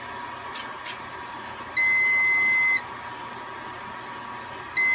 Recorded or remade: recorded